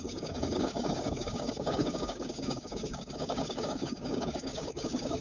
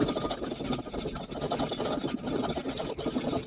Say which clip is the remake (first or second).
first